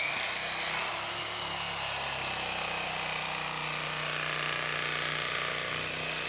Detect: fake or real real